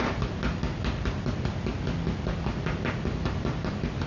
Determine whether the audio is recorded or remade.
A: recorded